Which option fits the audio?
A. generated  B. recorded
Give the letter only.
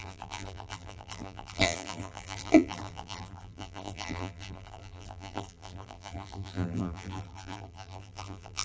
A